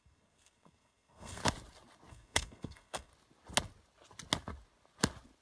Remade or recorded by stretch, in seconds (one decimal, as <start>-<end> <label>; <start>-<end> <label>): 0.0-1.4 remade; 1.4-2.1 recorded; 2.1-3.1 remade; 3.1-5.4 recorded